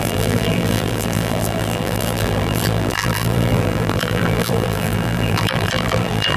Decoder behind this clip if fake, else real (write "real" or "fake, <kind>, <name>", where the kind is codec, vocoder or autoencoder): fake, vocoder, BigVGAN v2